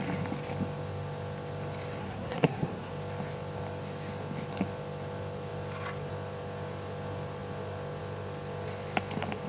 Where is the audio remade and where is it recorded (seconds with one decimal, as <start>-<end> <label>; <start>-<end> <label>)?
0.0-2.0 recorded; 2.0-2.9 remade; 2.9-9.5 recorded